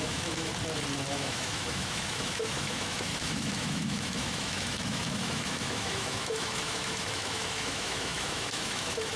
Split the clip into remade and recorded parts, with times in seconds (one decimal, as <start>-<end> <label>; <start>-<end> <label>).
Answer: 0.0-0.5 remade; 0.5-1.1 recorded; 1.1-9.2 remade